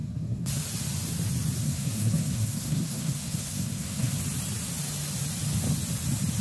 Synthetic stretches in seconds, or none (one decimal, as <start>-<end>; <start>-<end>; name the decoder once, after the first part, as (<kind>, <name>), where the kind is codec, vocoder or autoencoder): 0.0-0.5 (codec, SNAC); 1.6-4.2